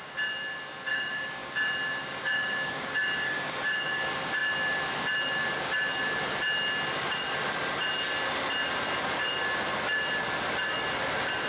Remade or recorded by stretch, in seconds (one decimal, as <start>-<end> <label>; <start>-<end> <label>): 0.0-0.9 recorded; 0.9-1.5 remade; 1.5-2.0 recorded; 2.0-4.0 remade; 4.0-11.5 recorded